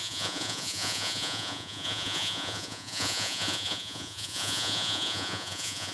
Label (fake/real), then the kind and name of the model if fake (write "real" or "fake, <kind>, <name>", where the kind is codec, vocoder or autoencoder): fake, vocoder, Vocos